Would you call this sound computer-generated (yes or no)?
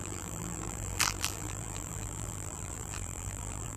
yes